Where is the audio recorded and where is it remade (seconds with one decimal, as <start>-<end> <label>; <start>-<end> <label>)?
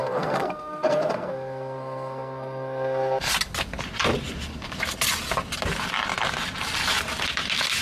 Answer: 0.0-3.3 remade; 3.3-7.8 recorded